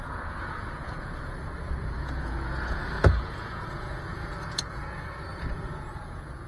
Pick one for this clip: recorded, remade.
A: remade